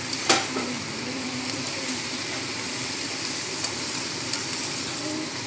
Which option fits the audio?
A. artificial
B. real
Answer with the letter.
A